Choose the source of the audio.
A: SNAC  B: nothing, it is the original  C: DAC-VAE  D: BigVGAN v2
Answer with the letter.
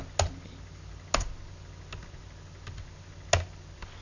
B